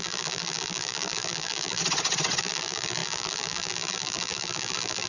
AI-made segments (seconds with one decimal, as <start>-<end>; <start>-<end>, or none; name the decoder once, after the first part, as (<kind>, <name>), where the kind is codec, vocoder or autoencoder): 0.0-1.8 (vocoder, BigVGAN v2); 2.4-5.1